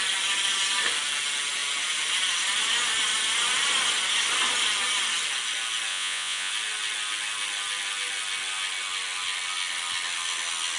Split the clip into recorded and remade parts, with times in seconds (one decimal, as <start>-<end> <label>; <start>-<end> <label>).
0.0-5.9 recorded; 5.9-6.5 remade; 6.5-10.8 recorded